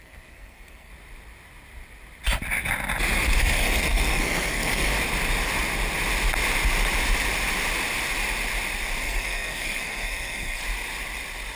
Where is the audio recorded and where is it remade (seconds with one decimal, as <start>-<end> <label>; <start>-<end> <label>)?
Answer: 0.0-0.9 remade; 0.9-3.4 recorded; 3.4-4.9 remade; 4.9-9.0 recorded; 9.0-10.6 remade; 10.6-11.6 recorded